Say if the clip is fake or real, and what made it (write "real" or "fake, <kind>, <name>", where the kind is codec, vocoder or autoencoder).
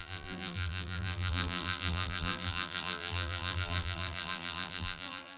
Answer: fake, vocoder, BigVGAN v2